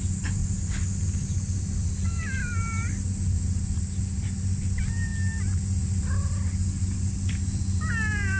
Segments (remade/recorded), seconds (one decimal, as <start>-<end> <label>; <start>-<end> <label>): 0.0-8.4 recorded